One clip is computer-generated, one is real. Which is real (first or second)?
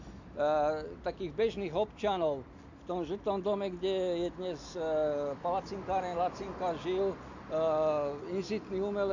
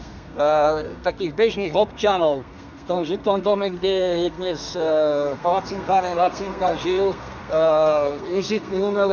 first